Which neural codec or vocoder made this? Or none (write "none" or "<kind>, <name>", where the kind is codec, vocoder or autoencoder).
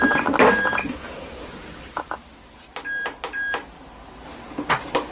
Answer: none